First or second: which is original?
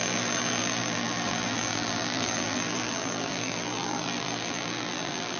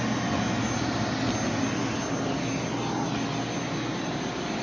second